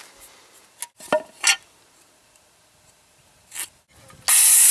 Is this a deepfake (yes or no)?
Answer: no